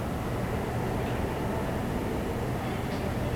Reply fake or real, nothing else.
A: real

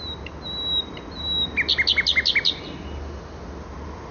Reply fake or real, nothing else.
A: real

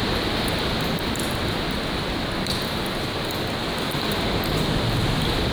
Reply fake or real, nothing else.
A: real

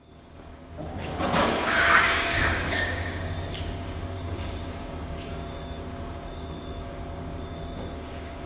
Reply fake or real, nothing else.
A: fake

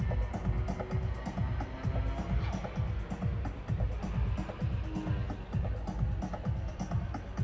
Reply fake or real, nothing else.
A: real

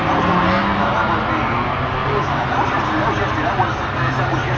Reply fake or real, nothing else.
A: real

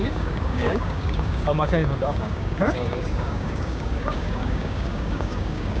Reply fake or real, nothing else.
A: fake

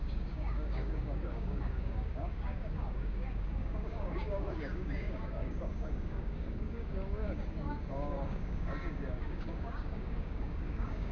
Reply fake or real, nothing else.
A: fake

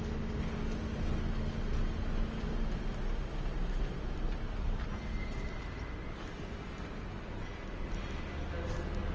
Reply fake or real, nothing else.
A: real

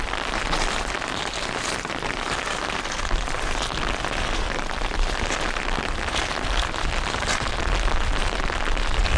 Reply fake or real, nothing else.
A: real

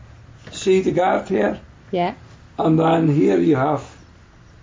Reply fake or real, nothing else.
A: real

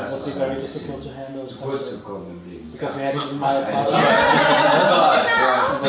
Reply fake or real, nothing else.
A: real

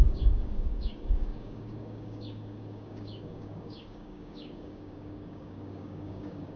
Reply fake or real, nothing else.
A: fake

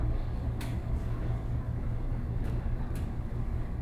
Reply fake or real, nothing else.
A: fake